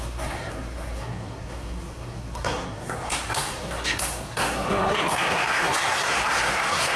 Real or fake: fake